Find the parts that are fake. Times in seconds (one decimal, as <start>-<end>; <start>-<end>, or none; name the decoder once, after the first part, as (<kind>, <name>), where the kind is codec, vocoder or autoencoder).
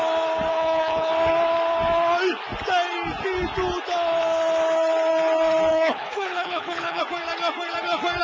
0.5-1.1 (codec, HILCodec); 5.7-7.0